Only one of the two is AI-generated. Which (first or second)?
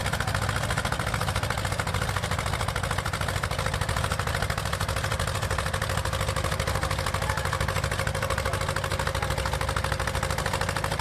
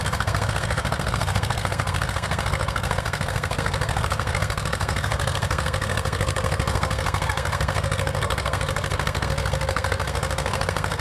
second